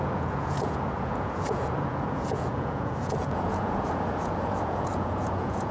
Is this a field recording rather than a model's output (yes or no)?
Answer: no